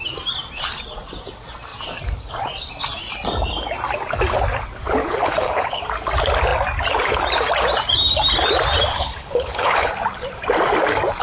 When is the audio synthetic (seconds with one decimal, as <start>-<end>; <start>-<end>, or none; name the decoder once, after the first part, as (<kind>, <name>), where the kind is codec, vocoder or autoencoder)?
5.0-5.8 (codec, HILCodec); 8.9-9.9